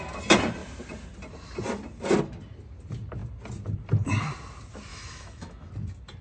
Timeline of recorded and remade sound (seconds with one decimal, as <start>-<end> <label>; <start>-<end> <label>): 0.0-4.9 recorded; 4.9-5.7 remade; 5.7-6.2 recorded